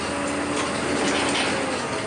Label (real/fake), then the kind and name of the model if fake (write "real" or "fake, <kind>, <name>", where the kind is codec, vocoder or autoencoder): real